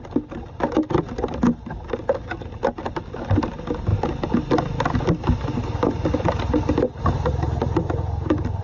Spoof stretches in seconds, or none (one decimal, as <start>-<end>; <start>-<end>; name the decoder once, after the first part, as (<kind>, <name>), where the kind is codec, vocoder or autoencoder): none